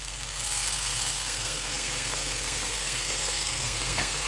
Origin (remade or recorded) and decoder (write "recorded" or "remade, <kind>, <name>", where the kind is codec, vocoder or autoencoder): remade, codec, SNAC